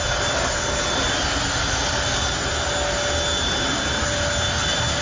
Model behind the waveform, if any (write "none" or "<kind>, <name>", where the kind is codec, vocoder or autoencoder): none